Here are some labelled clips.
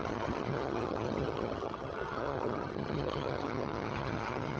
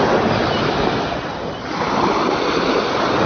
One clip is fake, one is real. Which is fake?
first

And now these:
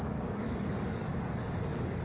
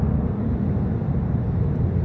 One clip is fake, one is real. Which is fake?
first